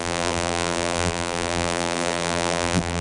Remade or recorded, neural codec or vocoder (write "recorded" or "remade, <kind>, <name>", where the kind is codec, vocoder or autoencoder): remade, vocoder, BigVGAN v2